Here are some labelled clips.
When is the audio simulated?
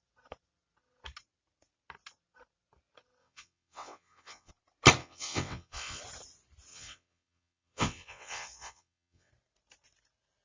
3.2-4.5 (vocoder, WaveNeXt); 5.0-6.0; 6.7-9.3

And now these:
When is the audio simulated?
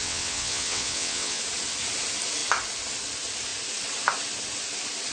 0.0-1.4 (vocoder, WaveNeXt)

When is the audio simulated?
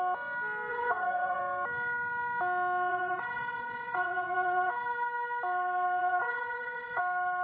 0.7-1.4 (vocoder, WaveNeXt); 2.9-4.7; 6.0-7.0